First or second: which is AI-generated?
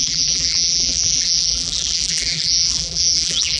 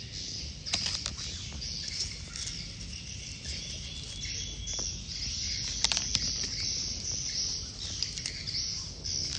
first